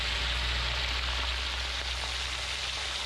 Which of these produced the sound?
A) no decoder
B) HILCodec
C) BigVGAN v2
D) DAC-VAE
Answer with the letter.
A